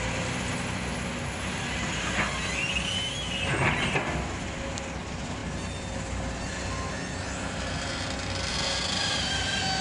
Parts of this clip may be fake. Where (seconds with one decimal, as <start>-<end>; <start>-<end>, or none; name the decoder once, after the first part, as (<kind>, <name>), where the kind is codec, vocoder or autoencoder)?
none